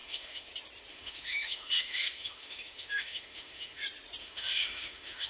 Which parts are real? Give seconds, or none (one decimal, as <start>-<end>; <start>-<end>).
0.5-0.9; 3.8-4.2